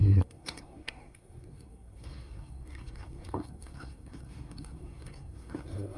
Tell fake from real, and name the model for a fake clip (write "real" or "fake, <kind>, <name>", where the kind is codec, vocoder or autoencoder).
fake, codec, SNAC